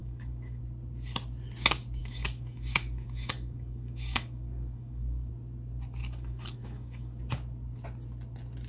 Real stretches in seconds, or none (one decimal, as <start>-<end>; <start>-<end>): 0.6-2.0; 5.3-6.0; 7.2-8.7